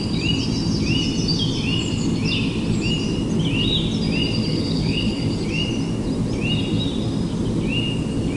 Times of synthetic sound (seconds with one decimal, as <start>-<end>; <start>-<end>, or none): 4.5-5.2